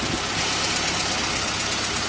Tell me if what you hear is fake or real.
real